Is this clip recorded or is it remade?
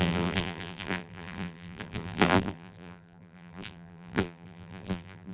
remade